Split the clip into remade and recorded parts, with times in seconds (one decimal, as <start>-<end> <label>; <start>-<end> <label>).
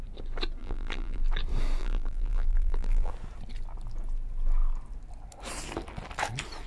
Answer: 0.0-0.6 recorded; 0.6-1.2 remade; 1.2-1.8 recorded; 1.8-3.1 remade; 3.1-6.7 recorded